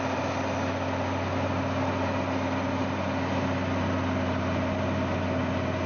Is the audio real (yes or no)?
yes